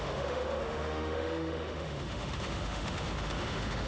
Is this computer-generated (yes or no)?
yes